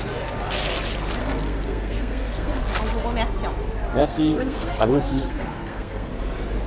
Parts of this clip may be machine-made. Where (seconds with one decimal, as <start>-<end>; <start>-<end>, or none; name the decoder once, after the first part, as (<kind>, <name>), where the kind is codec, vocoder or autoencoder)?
1.2-2.6 (codec, SNAC); 4.0-6.1